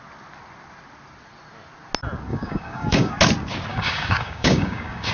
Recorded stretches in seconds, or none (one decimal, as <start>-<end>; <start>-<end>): 0.0-2.3; 3.1-3.7